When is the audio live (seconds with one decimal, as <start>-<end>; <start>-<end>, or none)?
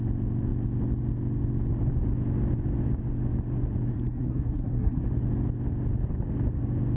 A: 0.0-3.9; 5.0-7.0